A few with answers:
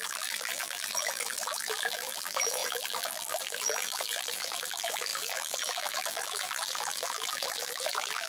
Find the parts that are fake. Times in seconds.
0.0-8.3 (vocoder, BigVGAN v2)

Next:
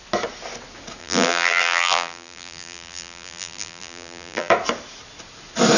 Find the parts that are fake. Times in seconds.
1.0-4.5 (vocoder, BigVGAN v2)

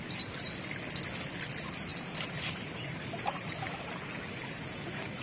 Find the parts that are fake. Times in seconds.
1.9-4.8 (vocoder, BigVGAN v2)